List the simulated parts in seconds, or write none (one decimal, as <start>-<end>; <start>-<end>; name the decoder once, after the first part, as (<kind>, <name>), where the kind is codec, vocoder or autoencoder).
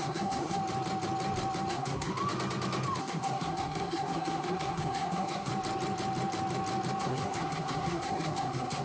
0.0-0.6 (codec, SNAC); 1.7-2.1; 3.0-5.5; 7.0-8.8